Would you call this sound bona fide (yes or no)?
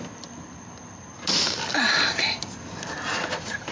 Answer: yes